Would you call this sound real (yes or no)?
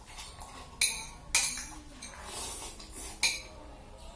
yes